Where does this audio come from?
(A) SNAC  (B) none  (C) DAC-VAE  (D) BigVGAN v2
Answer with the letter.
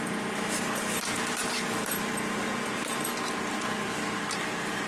B